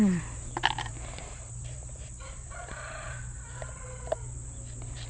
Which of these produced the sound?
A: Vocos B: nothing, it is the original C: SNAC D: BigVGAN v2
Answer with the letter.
D